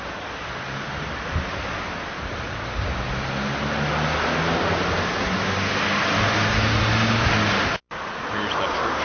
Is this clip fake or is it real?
real